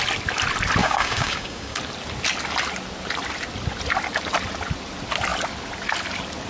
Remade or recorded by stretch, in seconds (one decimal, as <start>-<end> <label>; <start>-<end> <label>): 0.0-0.8 recorded; 0.8-1.8 remade; 1.8-6.5 recorded

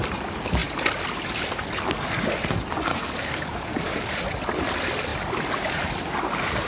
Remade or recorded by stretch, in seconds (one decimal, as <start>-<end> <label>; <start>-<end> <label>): 0.0-2.9 recorded; 2.9-4.1 remade; 4.1-6.7 recorded

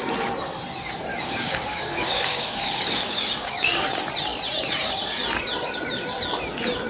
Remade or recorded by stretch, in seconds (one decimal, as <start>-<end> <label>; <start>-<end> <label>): 0.0-1.1 recorded; 1.1-3.8 remade; 3.8-6.9 recorded